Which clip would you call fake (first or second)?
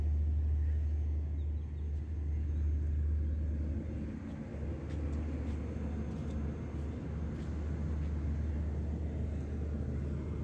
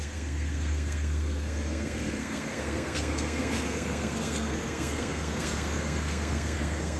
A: second